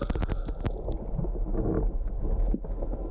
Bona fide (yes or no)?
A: yes